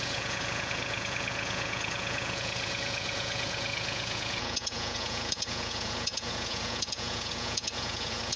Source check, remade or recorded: remade